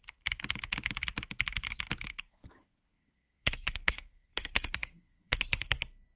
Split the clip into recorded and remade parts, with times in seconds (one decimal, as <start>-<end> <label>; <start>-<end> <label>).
0.0-2.2 recorded; 2.2-5.7 remade; 5.7-6.2 recorded